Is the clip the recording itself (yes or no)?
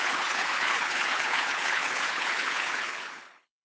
no